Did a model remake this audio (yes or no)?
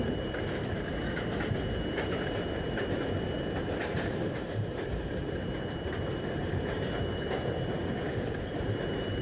yes